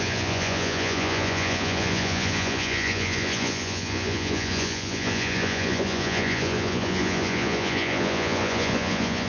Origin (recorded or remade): remade